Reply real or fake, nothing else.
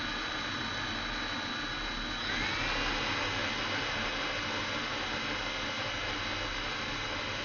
real